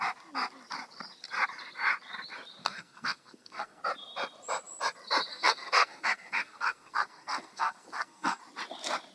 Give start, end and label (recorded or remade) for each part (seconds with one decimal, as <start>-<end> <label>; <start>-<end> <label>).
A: 0.0-2.6 recorded; 2.6-3.8 remade; 3.8-5.3 recorded; 5.3-8.4 remade; 8.4-9.1 recorded